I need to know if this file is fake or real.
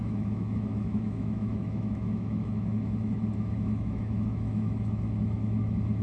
fake